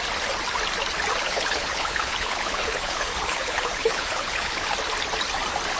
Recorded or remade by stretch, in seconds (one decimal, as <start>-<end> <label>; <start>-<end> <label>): 0.0-1.2 recorded; 1.2-4.7 remade; 4.7-5.8 recorded